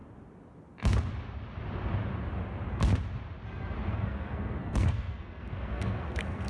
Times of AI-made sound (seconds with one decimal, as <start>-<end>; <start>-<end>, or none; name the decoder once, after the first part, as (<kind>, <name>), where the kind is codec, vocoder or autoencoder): 3.9-6.5 (codec, SNAC)